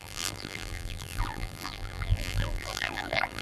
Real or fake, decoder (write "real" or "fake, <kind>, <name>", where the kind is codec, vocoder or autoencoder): fake, vocoder, BigVGAN v2